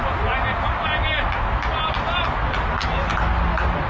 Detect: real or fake real